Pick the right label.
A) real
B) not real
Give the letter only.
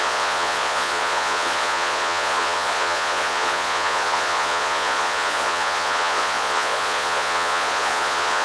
B